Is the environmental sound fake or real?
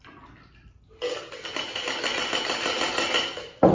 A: real